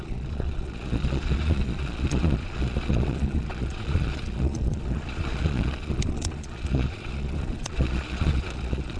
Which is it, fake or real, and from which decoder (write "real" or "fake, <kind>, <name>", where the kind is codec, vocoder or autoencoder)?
fake, vocoder, Vocos